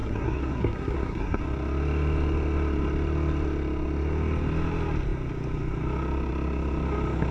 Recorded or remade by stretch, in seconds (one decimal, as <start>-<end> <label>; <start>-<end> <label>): 0.0-1.4 remade; 1.4-7.3 recorded